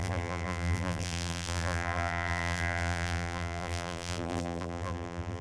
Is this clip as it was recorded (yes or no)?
no